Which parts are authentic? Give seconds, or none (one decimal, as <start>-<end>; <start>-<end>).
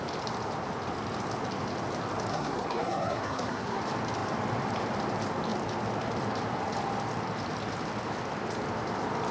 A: 0.0-2.3; 3.8-9.3